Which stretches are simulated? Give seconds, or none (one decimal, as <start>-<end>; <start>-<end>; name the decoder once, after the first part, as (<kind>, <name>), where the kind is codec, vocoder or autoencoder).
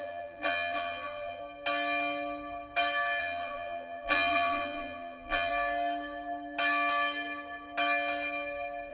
0.0-1.4 (vocoder, BigVGAN v2); 3.2-5.5